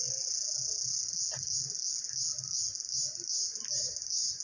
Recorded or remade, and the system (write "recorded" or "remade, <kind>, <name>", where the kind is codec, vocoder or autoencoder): recorded